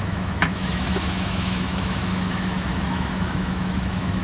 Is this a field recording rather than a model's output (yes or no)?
no